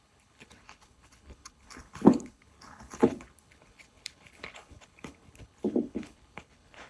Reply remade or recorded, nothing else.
remade